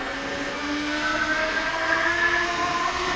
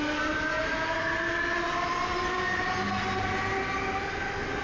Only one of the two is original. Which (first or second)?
second